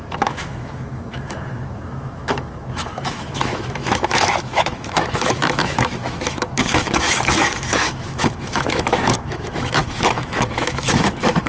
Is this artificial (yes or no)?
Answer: yes